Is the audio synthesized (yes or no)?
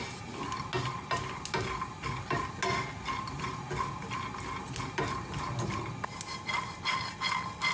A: no